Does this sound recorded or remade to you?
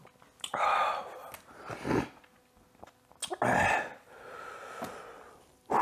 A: recorded